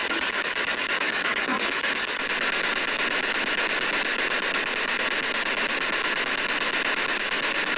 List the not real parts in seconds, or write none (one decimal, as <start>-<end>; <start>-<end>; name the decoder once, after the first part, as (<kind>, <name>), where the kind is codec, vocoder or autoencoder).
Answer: 0.0-2.2 (codec, DAC)